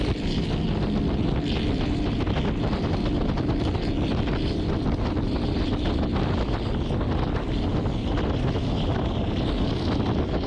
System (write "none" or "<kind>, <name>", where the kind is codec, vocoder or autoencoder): none